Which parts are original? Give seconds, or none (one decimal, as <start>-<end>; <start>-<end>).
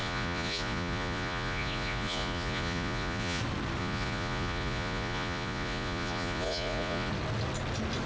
3.4-3.8; 7.1-8.1